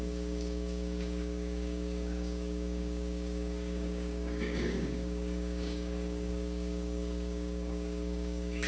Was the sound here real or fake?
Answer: fake